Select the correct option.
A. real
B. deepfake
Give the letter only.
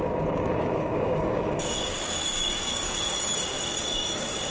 B